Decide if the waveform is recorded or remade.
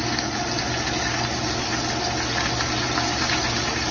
recorded